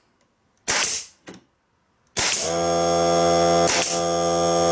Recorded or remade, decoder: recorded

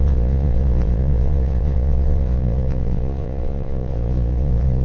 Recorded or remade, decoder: remade, vocoder, Vocos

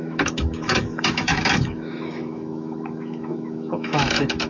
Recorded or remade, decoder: remade, autoencoder, DAC-VAE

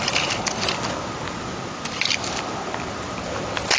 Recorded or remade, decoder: recorded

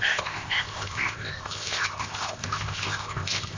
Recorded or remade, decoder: remade, codec, ZipCodec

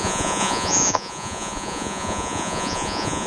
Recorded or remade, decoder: remade, vocoder, Vocos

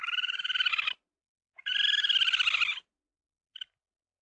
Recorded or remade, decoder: recorded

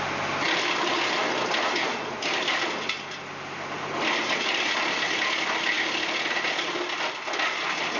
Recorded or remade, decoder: recorded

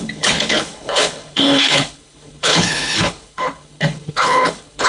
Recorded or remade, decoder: remade, codec, HILCodec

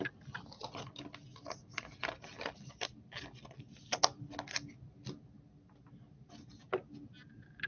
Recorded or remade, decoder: recorded